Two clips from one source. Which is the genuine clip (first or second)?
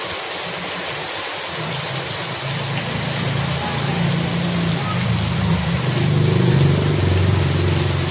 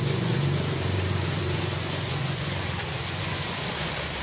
first